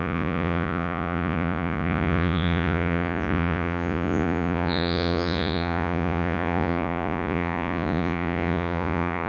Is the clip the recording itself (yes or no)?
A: no